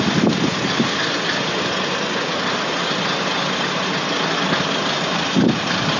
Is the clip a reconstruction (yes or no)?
no